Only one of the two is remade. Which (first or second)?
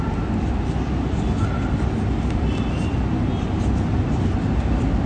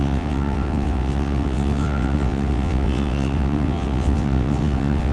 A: second